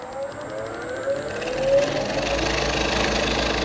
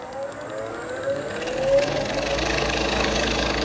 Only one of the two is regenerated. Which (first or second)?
second